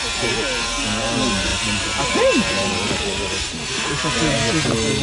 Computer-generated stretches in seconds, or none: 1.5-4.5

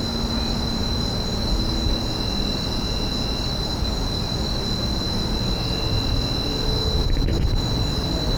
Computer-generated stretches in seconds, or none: 7.0-8.4

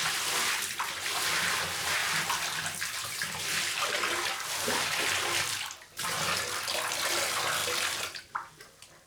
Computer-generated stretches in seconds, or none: none

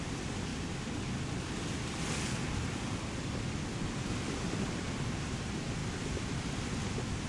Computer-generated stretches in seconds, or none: 0.5-4.4; 5.8-6.4

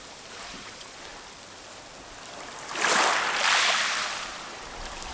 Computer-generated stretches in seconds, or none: 0.0-1.1; 4.2-5.1

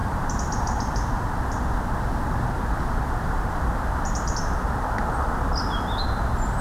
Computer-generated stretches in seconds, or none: 0.0-6.6

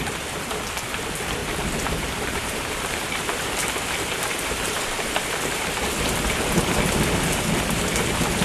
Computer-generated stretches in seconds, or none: 1.4-6.1